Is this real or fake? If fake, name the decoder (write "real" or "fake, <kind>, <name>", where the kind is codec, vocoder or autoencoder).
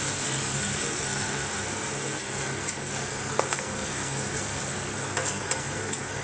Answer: fake, codec, SNAC